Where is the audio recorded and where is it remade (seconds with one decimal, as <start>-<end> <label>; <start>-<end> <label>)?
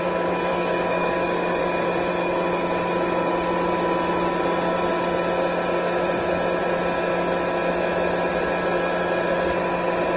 0.0-0.5 recorded; 0.5-1.6 remade; 1.6-10.2 recorded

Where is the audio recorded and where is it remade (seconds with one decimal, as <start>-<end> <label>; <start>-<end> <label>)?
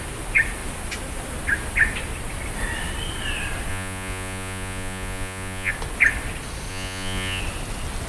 0.0-3.7 recorded; 3.7-5.7 remade; 5.7-6.7 recorded; 6.7-7.4 remade; 7.4-8.1 recorded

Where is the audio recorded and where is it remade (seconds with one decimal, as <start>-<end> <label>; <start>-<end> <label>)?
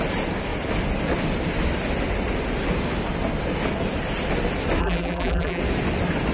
0.0-4.8 recorded; 4.8-5.6 remade; 5.6-6.3 recorded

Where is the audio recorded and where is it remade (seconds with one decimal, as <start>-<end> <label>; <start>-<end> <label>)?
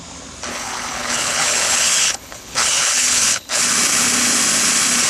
0.0-0.5 recorded; 0.5-3.6 remade; 3.6-5.1 recorded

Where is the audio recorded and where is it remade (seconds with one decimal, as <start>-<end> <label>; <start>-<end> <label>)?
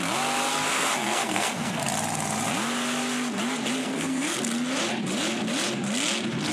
0.0-0.5 recorded; 0.5-1.8 remade; 1.8-3.8 recorded; 3.8-4.4 remade; 4.4-6.5 recorded